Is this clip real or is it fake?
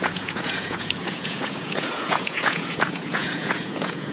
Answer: fake